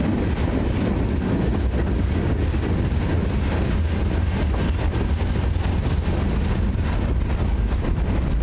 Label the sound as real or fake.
real